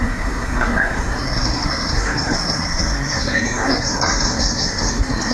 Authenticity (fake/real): fake